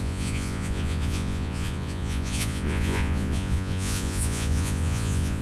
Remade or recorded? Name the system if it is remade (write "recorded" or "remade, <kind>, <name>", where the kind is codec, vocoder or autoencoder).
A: remade, vocoder, Vocos